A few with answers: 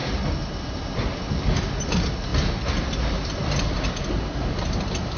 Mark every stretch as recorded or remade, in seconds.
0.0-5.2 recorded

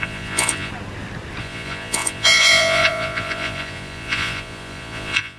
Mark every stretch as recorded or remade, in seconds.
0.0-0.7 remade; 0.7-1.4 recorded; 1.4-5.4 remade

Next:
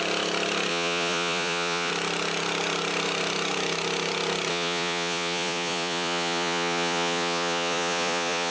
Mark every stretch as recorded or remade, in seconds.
0.0-0.7 recorded; 0.7-1.9 remade; 1.9-4.5 recorded; 4.5-8.5 remade

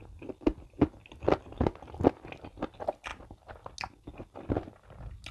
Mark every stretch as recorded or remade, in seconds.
0.0-5.3 recorded

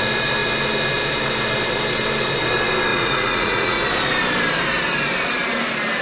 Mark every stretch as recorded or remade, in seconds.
0.0-2.9 recorded; 2.9-3.8 remade; 3.8-6.0 recorded